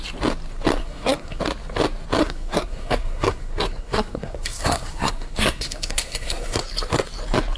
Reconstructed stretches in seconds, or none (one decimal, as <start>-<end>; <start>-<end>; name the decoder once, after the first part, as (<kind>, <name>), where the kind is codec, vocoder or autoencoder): 0.8-1.4 (codec, SNAC); 2.2-6.6